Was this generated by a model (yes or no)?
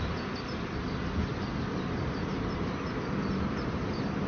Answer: no